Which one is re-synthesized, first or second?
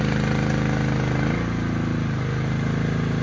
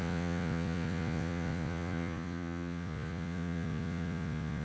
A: second